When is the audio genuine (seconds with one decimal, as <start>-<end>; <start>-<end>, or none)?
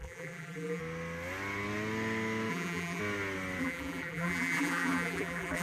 0.8-2.5; 3.0-3.6